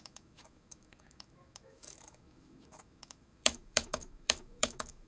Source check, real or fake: fake